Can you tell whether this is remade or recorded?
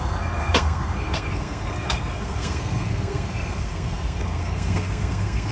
remade